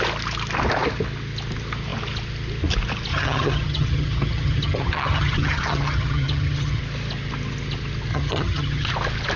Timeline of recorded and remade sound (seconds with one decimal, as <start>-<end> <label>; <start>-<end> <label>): 0.0-3.1 recorded; 3.1-6.8 remade; 6.8-8.1 recorded; 8.1-8.9 remade; 8.9-9.4 recorded